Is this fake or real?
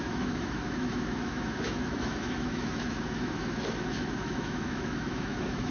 fake